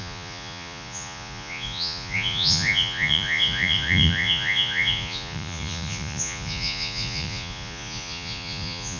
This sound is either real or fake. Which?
fake